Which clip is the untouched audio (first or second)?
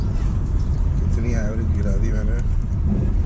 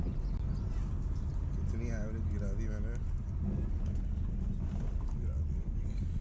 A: second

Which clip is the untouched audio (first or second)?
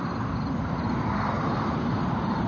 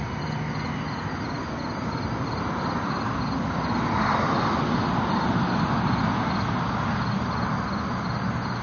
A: second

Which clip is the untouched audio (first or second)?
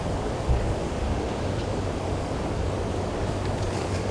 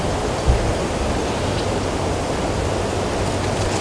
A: second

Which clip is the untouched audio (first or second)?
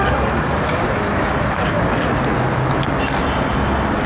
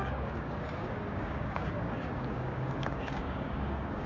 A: first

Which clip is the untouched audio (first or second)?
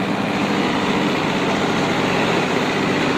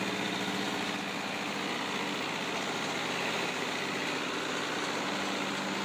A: second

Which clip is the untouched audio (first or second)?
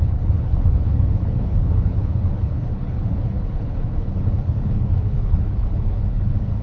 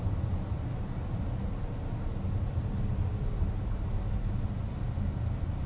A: second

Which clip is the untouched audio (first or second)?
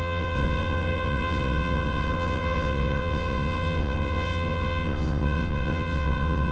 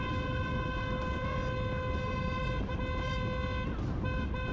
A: second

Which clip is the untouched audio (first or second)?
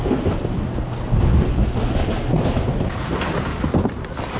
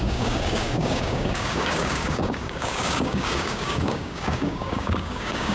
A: first